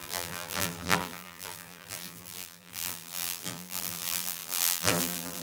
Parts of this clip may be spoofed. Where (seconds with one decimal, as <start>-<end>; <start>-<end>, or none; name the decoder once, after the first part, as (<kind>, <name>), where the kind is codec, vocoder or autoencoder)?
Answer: 0.0-5.4 (vocoder, BigVGAN v2)